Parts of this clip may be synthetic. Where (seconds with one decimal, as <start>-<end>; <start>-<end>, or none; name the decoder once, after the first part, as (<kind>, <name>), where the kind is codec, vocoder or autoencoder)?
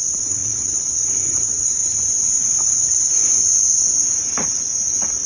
0.0-1.8 (vocoder, Vocos)